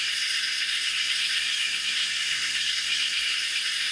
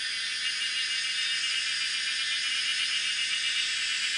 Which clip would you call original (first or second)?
second